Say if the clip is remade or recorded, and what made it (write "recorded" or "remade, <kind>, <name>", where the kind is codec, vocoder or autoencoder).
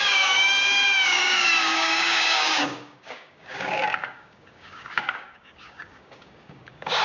remade, codec, DAC